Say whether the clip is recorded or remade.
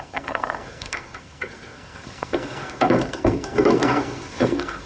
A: remade